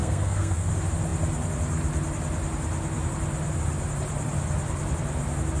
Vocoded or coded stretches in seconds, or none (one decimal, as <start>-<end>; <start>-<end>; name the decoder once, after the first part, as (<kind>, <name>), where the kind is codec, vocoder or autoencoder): 0.0-0.7 (codec, SNAC)